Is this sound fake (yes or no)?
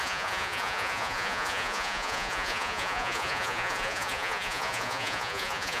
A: yes